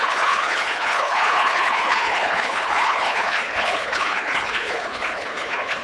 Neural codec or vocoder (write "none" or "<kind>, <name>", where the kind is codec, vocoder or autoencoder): codec, HILCodec